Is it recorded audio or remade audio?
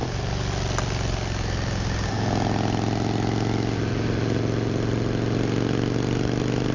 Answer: recorded